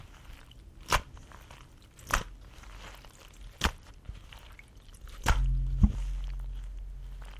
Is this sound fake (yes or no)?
no